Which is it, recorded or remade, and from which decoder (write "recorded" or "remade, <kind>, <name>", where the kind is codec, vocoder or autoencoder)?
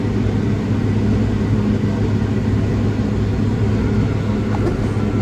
recorded